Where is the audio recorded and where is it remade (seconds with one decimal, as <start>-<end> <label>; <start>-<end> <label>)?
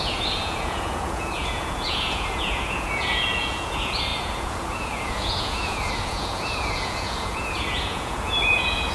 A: 0.0-8.9 remade